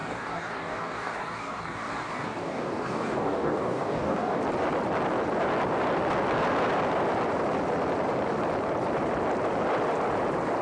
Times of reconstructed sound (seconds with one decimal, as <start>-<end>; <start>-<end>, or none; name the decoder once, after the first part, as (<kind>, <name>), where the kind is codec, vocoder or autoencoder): 0.0-4.4 (codec, DAC)